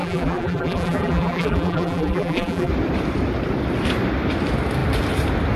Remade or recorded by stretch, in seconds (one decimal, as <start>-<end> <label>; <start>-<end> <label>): 0.0-2.7 remade; 2.7-5.6 recorded